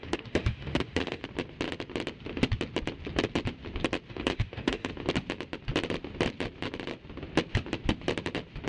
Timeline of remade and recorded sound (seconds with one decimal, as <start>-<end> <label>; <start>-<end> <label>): 0.0-1.2 remade; 1.2-4.1 recorded; 4.1-4.9 remade; 4.9-8.7 recorded